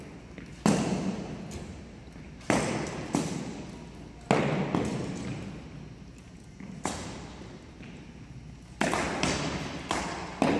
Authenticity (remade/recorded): recorded